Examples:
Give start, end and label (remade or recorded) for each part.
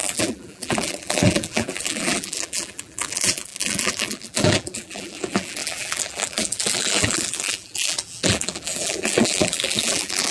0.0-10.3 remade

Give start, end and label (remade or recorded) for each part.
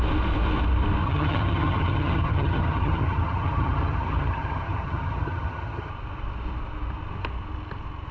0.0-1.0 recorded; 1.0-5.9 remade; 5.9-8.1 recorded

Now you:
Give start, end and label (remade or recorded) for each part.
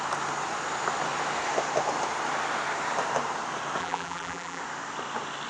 0.0-3.8 recorded; 3.8-4.6 remade; 4.6-5.5 recorded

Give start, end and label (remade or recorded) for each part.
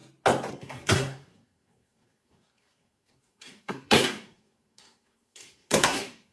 0.0-0.5 recorded; 0.5-6.3 remade